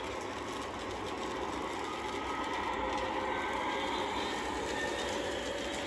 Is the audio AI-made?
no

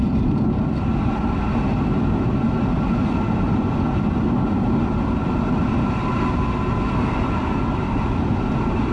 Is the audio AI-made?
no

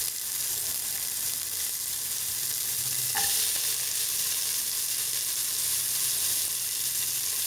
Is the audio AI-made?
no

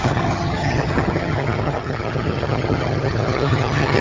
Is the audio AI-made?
yes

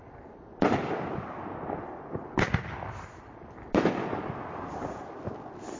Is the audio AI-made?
no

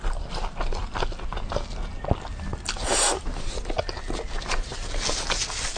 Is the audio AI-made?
no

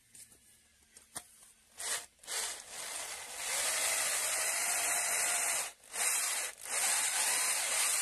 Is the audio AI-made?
no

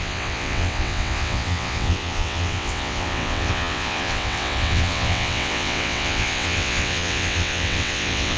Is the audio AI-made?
yes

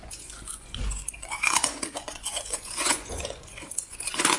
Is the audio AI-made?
yes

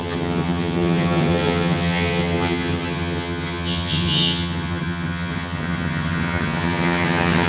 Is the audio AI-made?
yes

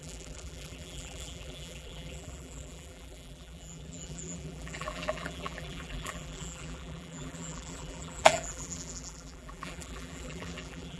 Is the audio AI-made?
yes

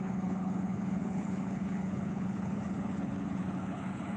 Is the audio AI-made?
yes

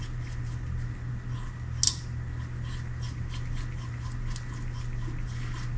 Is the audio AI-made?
no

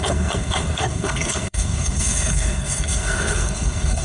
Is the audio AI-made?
yes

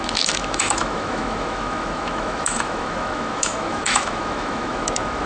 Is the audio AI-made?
yes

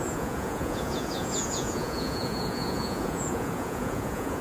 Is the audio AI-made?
yes